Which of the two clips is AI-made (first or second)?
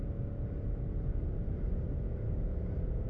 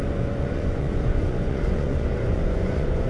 second